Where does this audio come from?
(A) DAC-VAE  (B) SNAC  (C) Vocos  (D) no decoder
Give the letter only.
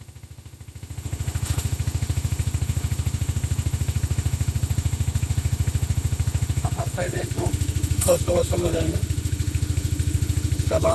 A